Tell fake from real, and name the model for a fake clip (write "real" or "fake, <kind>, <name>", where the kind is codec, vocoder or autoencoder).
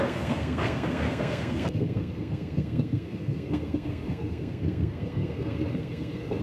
fake, codec, SNAC